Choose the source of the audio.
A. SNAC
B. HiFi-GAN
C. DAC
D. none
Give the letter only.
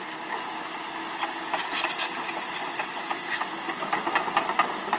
D